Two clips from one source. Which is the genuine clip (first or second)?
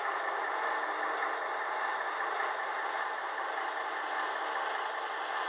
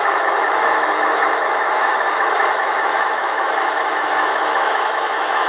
first